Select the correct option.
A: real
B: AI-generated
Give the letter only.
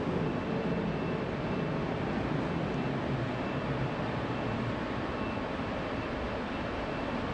A